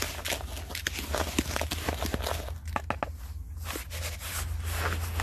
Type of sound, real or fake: real